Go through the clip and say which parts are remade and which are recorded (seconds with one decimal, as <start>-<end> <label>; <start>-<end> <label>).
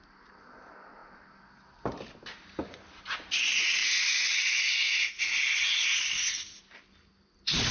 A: 0.0-3.8 recorded; 3.8-5.4 remade; 5.4-7.7 recorded